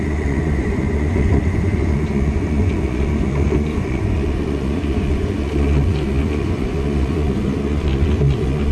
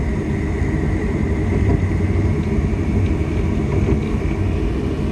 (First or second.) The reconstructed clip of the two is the first